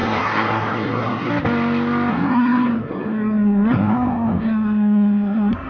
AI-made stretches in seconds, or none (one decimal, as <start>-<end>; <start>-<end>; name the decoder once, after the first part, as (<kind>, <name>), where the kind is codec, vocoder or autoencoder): 0.0-1.3 (codec, SNAC); 2.1-5.7